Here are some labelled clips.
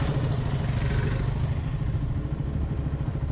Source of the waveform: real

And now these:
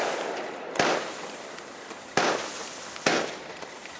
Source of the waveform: fake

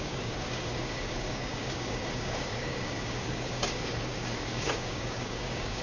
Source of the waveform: fake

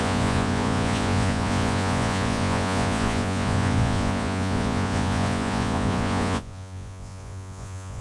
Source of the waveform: fake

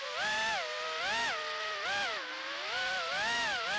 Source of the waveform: real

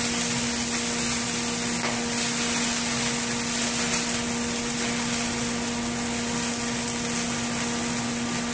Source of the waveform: real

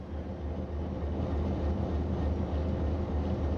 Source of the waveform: real